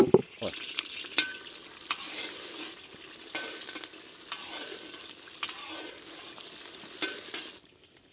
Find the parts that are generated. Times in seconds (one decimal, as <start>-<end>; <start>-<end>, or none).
none